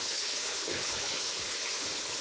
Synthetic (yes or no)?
yes